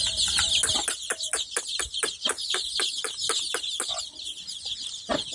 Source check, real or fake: real